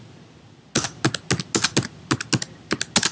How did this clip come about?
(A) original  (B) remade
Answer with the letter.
A